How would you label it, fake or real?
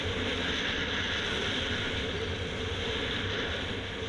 real